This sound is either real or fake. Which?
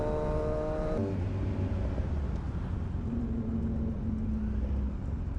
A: real